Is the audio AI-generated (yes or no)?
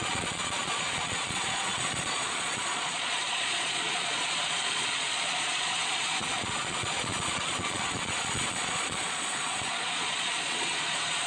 yes